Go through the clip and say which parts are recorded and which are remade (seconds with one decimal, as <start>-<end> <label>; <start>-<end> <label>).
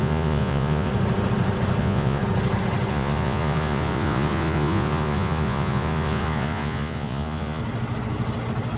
0.0-0.9 remade; 0.9-1.8 recorded; 1.8-2.2 remade; 2.2-2.9 recorded; 2.9-7.6 remade; 7.6-8.8 recorded